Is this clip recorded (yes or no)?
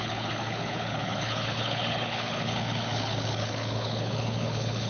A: no